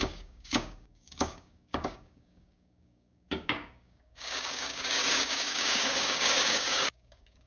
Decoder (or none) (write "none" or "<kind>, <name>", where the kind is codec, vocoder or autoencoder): codec, DAC